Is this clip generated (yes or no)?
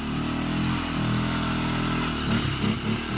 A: no